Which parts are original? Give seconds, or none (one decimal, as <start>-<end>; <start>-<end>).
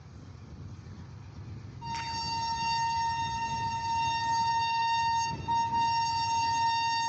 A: 0.0-4.5; 5.4-7.1